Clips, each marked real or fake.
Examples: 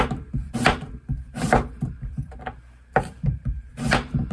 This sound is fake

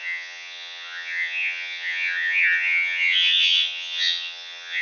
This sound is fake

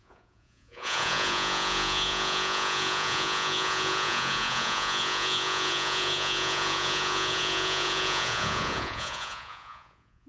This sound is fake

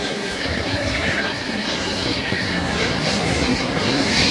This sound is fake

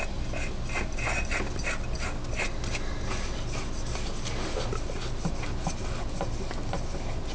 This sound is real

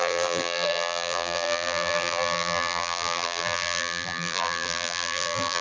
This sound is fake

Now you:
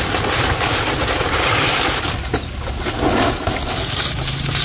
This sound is real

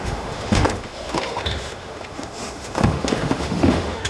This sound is fake